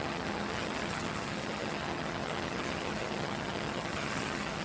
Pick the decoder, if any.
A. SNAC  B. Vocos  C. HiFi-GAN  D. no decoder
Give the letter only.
C